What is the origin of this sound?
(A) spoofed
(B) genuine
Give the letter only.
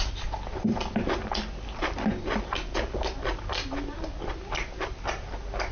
B